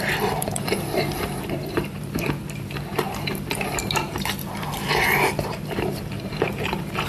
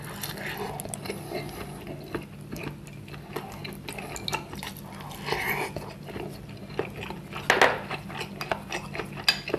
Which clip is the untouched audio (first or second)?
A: second